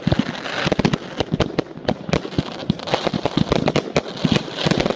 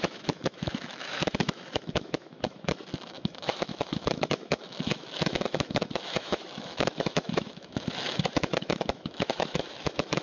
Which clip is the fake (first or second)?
second